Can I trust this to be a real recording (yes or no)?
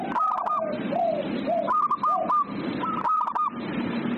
yes